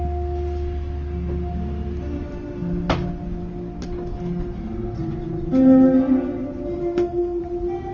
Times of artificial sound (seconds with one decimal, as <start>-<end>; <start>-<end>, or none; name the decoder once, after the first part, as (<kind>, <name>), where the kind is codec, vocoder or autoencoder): 6.8-7.4 (codec, SNAC)